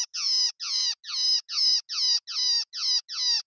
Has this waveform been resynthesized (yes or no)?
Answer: no